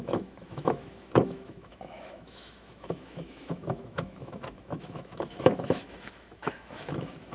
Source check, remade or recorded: remade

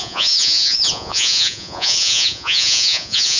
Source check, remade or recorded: remade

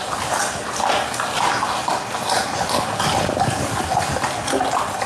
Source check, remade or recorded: recorded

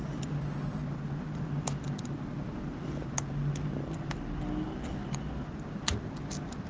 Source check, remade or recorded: recorded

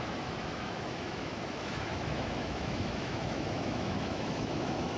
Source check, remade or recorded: remade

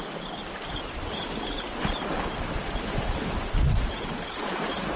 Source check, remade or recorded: recorded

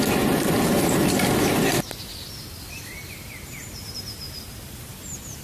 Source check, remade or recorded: recorded